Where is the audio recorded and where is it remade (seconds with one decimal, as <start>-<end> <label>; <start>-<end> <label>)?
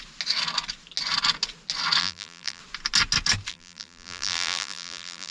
0.0-2.0 recorded; 2.0-2.6 remade; 2.6-3.5 recorded; 3.5-5.3 remade